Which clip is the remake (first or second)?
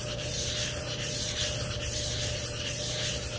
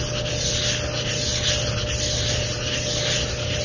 first